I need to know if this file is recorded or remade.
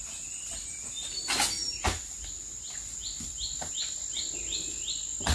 recorded